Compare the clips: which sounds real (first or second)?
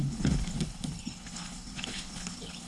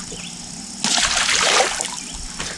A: second